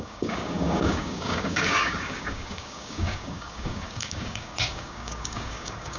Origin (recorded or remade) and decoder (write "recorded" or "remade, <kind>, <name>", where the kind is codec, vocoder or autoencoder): remade, codec, DAC